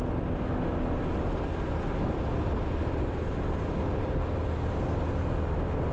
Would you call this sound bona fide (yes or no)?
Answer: yes